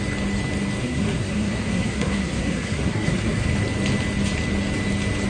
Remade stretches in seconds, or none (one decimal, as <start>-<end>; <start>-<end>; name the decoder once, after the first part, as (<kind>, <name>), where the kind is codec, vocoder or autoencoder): 0.8-3.5 (codec, SNAC)